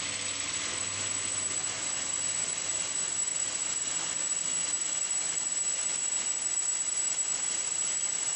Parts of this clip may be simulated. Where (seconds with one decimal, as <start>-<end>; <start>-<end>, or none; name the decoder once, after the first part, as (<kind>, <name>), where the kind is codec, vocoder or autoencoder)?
none